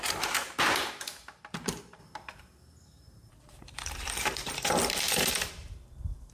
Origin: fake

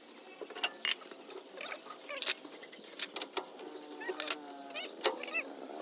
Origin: real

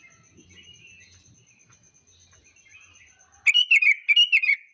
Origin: real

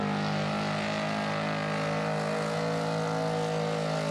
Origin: real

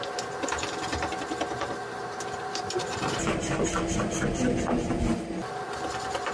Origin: real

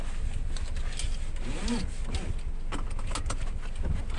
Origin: real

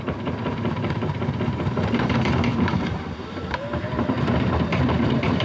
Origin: fake